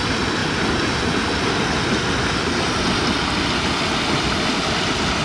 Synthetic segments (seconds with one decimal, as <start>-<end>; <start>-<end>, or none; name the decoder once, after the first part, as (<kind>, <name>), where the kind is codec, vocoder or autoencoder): none